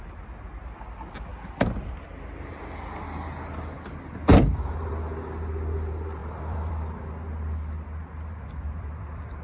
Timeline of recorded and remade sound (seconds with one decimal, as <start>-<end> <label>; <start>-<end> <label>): 0.0-4.3 recorded; 4.3-4.9 remade; 4.9-6.2 recorded; 6.2-6.7 remade; 6.7-9.4 recorded